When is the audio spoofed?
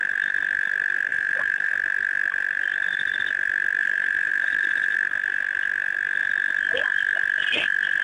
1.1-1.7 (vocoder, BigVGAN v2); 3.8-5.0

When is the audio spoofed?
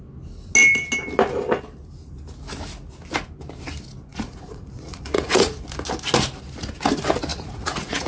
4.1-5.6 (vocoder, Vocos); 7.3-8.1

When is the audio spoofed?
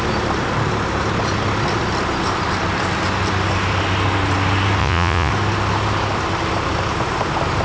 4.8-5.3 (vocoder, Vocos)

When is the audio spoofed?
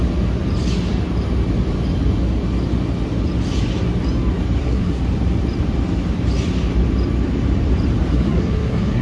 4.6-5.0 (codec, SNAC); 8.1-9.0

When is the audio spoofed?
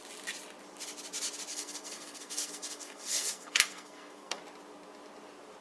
1.5-4.4 (codec, SNAC)